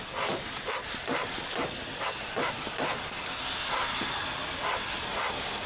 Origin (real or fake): real